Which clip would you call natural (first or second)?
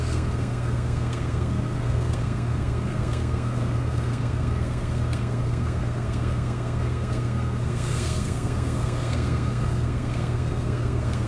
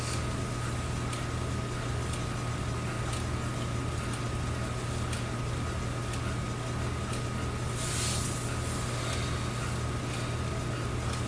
second